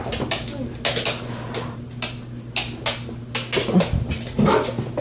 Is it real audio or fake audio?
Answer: real